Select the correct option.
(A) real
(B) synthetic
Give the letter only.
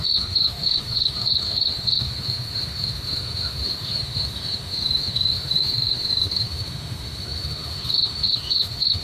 B